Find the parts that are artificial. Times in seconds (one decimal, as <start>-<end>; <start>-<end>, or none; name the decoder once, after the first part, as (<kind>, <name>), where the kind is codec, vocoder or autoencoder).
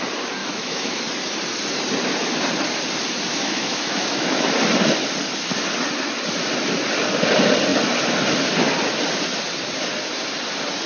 0.4-1.0 (autoencoder, DAC-VAE); 3.3-4.5